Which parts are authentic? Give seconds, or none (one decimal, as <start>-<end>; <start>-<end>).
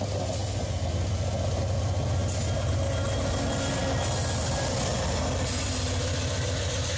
0.0-7.0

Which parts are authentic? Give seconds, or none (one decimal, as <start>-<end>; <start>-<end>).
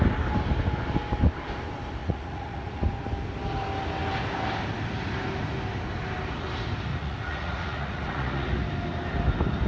0.0-2.0; 2.8-6.9; 8.6-9.7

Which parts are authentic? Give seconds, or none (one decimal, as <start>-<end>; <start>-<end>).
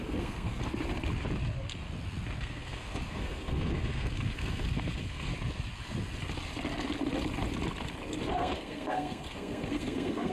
0.6-2.4; 5.3-8.3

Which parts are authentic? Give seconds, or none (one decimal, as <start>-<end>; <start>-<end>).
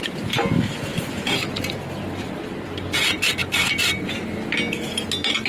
0.0-0.9; 4.2-5.5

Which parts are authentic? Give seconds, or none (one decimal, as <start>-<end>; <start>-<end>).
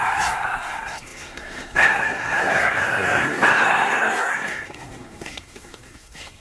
none